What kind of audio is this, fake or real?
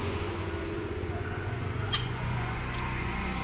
fake